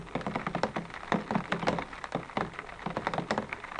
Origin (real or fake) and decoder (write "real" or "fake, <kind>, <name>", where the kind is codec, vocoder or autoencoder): real